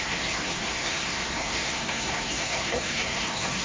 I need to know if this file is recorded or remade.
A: remade